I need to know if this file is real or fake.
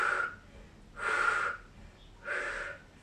real